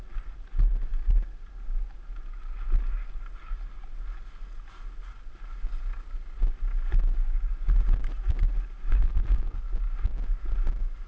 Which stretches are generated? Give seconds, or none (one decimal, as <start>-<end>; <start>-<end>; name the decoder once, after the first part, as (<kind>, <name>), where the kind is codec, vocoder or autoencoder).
8.9-9.6 (codec, SNAC)